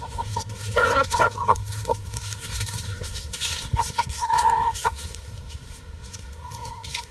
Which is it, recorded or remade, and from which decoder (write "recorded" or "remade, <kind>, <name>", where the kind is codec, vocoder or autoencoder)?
remade, codec, SNAC